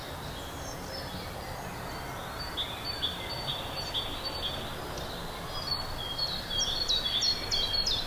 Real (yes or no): yes